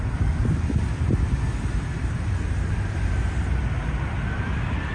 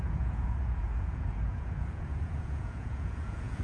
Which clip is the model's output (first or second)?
second